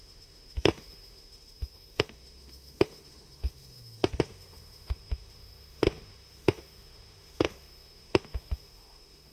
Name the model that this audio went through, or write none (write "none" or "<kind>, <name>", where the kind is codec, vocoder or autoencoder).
autoencoder, DAC-VAE